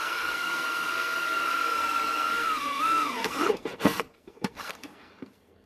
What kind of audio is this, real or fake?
fake